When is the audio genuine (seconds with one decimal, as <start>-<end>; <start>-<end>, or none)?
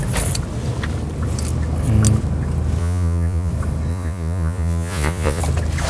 0.0-2.8; 3.5-3.9; 5.4-5.9